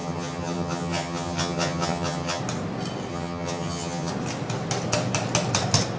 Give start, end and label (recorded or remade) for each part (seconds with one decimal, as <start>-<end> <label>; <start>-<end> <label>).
0.0-2.4 remade; 2.4-3.1 recorded; 3.1-4.1 remade; 4.1-6.0 recorded